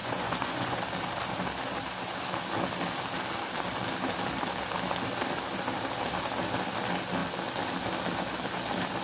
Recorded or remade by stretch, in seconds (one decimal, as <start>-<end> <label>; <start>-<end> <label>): 0.0-0.8 remade; 0.8-9.0 recorded